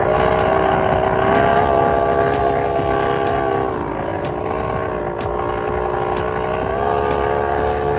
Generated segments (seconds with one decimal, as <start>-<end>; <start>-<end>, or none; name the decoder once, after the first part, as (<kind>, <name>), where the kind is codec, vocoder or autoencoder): none